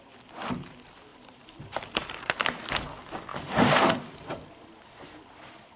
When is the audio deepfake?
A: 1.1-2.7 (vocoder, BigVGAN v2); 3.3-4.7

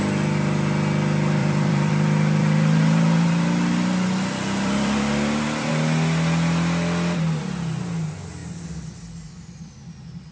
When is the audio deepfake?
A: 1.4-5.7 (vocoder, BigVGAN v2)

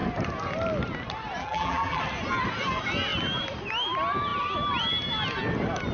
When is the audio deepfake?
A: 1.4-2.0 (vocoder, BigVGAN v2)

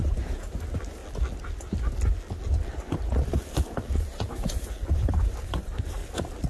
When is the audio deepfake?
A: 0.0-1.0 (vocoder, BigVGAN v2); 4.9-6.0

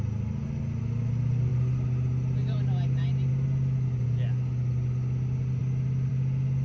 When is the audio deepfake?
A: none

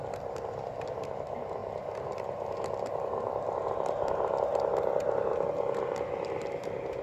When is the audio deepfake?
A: none